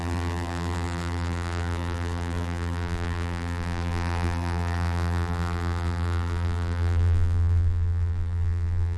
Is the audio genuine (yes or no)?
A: no